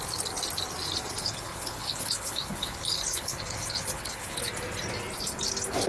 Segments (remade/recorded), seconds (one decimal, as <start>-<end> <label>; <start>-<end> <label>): 0.0-1.2 recorded; 1.2-4.5 remade; 4.5-5.9 recorded